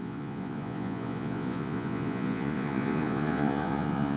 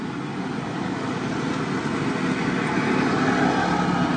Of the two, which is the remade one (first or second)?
first